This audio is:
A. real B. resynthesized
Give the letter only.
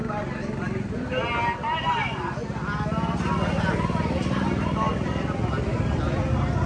A